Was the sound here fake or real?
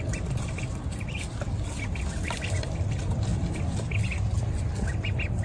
real